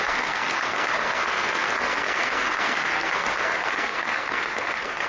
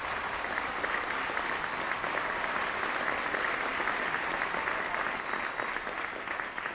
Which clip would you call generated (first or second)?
first